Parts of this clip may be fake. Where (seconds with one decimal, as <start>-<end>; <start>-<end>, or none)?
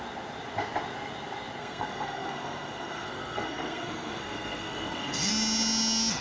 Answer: 1.6-5.3